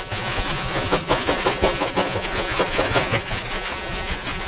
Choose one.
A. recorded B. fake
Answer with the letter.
B